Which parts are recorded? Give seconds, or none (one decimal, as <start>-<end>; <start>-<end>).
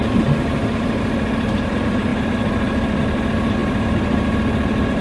0.0-5.0